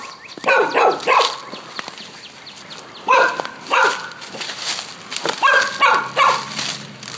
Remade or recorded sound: recorded